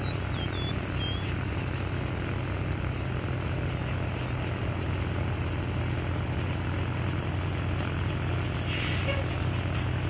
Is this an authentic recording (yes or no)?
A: yes